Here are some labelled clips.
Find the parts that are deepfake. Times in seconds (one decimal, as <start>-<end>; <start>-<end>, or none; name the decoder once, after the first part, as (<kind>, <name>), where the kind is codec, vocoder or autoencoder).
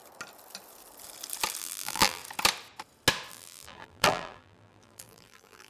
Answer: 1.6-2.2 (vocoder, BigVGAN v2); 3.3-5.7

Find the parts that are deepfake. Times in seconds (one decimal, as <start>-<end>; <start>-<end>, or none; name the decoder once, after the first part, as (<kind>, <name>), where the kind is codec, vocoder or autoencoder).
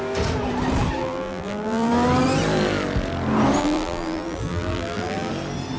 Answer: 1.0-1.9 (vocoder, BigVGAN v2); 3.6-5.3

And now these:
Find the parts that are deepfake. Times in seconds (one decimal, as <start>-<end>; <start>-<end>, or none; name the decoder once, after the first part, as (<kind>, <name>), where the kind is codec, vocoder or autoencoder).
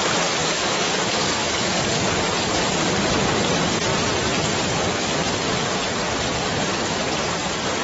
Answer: 0.4-2.1 (codec, DAC)